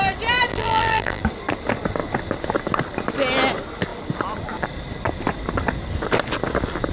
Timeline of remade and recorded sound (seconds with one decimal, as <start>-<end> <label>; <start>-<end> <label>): 0.0-0.5 recorded; 0.5-1.2 remade; 1.2-6.9 recorded